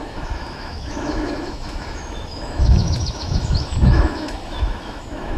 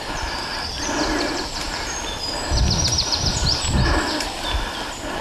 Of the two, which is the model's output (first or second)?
first